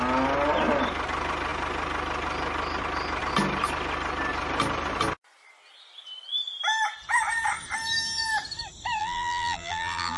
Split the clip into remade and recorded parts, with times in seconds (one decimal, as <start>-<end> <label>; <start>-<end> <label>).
0.0-9.0 recorded; 9.0-10.2 remade